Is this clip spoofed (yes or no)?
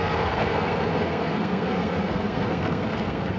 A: yes